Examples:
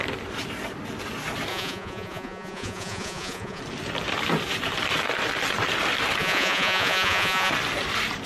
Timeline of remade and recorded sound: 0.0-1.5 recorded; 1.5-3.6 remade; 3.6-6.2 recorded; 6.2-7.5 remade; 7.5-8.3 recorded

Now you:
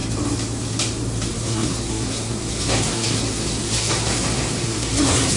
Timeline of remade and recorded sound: 0.0-1.3 recorded; 1.3-5.4 remade

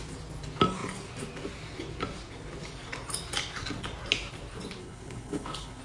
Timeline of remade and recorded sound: 0.0-4.8 recorded; 4.8-5.8 remade

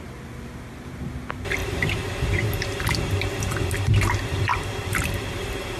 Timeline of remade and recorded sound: 0.0-1.6 recorded; 1.6-3.7 remade; 3.7-4.5 recorded; 4.5-5.8 remade